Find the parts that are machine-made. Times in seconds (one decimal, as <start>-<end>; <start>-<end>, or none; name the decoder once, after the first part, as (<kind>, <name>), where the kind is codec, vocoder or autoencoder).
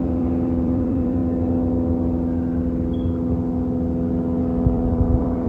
0.0-1.2 (vocoder, BigVGAN v2); 4.4-5.5